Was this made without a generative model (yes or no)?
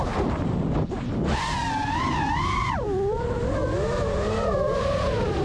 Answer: yes